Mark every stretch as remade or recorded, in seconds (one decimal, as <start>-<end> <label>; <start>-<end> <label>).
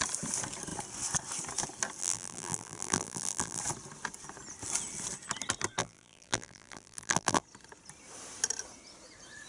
0.0-2.0 recorded; 2.0-3.6 remade; 3.6-5.8 recorded; 5.8-7.4 remade; 7.4-9.5 recorded